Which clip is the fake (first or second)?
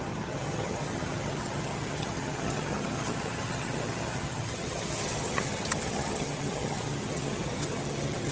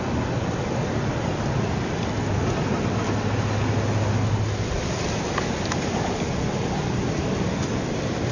first